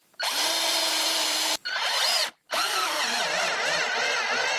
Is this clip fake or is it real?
fake